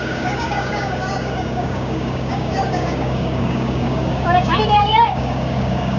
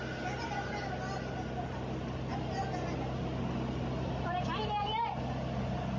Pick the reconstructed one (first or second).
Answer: first